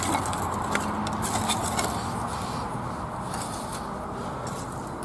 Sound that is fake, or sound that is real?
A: real